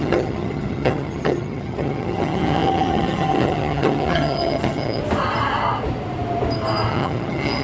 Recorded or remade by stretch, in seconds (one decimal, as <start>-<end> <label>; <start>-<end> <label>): 0.0-5.0 remade; 5.0-6.9 recorded; 6.9-7.6 remade

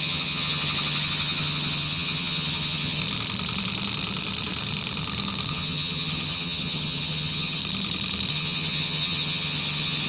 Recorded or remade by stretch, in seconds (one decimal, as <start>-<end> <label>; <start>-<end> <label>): 0.0-3.0 remade; 3.0-5.5 recorded; 5.5-7.6 remade; 7.6-8.3 recorded; 8.3-10.1 remade

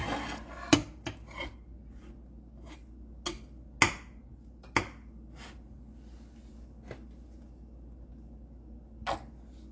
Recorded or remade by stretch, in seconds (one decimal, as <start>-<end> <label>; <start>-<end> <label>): 0.0-9.7 recorded

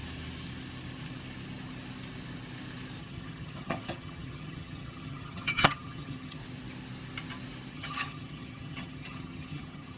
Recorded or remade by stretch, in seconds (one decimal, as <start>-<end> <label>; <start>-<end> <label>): 0.0-3.0 recorded; 3.0-6.4 remade; 6.4-7.7 recorded; 7.7-10.0 remade

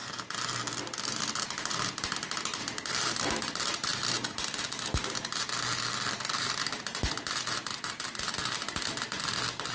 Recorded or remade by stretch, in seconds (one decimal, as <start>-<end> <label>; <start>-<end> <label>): 0.0-9.7 recorded